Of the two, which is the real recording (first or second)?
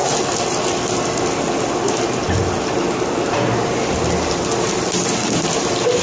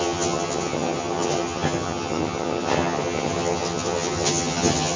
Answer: first